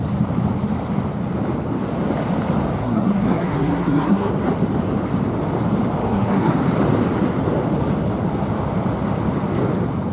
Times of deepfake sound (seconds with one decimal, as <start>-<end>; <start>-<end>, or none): 2.8-4.3; 6.0-6.6